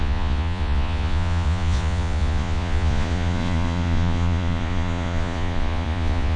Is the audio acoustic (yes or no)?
no